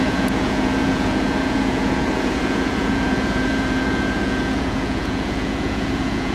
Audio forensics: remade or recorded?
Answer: remade